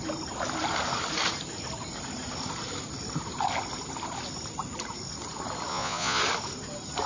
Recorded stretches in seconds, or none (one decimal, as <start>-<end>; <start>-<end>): 0.0-5.7; 6.2-7.1